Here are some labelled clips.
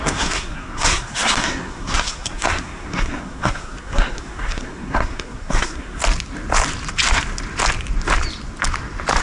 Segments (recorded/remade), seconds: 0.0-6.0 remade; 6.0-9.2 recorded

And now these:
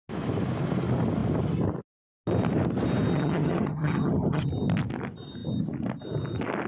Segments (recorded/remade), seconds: 0.0-3.1 recorded; 3.1-4.5 remade; 4.5-6.7 recorded

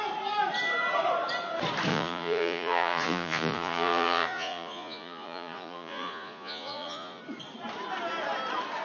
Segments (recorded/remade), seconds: 0.0-1.9 recorded; 1.9-7.2 remade; 7.2-8.8 recorded